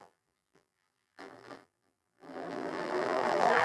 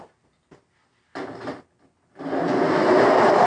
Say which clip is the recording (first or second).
second